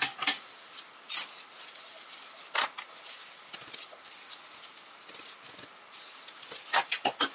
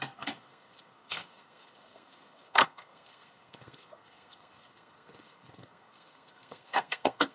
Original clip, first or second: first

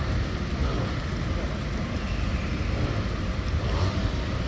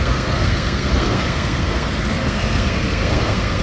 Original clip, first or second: first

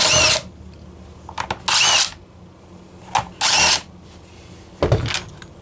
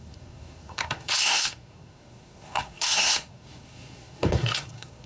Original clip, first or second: first